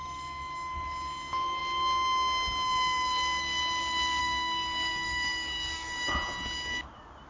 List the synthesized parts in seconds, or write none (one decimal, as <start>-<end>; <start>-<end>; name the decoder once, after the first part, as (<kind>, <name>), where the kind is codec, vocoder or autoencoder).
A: 4.2-6.1 (codec, DAC)